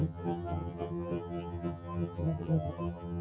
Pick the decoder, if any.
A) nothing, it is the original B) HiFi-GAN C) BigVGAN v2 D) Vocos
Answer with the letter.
B